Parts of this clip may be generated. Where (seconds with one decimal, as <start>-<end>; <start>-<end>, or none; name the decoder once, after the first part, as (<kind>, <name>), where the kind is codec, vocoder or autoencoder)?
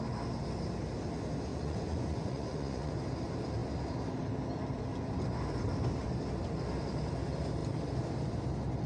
1.5-2.9 (vocoder, Vocos)